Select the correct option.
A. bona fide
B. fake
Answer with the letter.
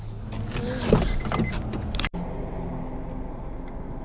A